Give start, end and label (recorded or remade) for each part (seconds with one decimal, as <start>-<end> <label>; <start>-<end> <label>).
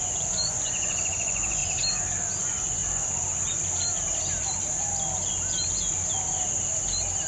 0.0-1.6 remade; 1.6-2.4 recorded; 2.4-2.8 remade; 2.8-7.3 recorded